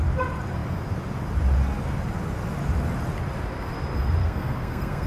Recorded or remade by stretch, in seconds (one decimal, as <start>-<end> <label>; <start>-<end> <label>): 0.0-4.2 recorded; 4.2-5.1 remade